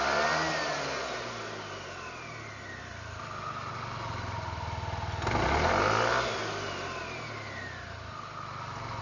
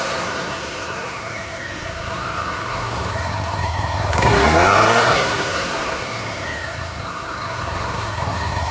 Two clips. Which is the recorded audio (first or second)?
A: first